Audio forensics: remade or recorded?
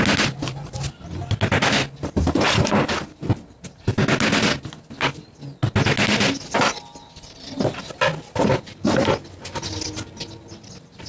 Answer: recorded